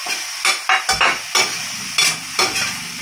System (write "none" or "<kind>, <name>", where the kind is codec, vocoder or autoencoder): none